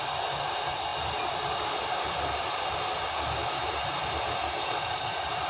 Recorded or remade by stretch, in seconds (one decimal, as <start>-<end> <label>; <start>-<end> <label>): 0.0-5.5 recorded